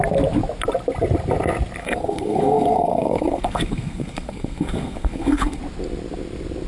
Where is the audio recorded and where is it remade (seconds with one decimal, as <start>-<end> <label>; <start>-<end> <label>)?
0.0-1.8 recorded; 1.8-5.6 remade; 5.6-6.7 recorded

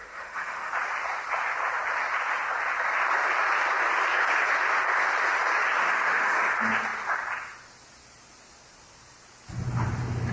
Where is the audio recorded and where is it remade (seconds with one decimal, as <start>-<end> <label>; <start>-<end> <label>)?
0.0-0.7 remade; 0.7-5.8 recorded; 5.8-6.5 remade; 6.5-10.3 recorded

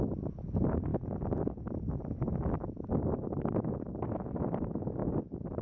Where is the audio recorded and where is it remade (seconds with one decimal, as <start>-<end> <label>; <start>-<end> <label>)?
0.0-5.6 recorded

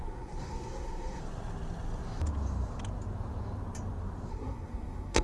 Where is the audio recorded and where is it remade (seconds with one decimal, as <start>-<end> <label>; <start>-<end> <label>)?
0.0-1.2 remade; 1.2-4.3 recorded; 4.3-5.2 remade

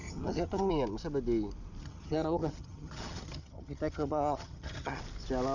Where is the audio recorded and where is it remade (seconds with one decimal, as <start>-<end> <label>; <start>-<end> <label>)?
0.0-0.7 remade; 0.7-1.8 recorded; 1.8-5.0 remade; 5.0-5.5 recorded

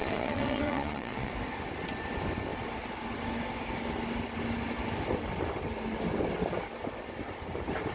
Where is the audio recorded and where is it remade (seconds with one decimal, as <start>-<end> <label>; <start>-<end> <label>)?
0.0-1.3 remade; 1.3-7.9 recorded